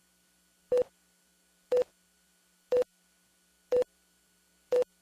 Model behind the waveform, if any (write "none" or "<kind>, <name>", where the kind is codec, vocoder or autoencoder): none